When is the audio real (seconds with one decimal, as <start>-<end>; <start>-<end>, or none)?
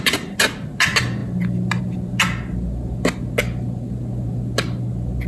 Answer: 0.0-5.3